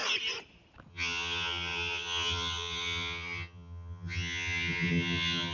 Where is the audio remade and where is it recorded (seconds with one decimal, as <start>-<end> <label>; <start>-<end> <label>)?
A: 0.0-0.9 recorded; 0.9-5.5 remade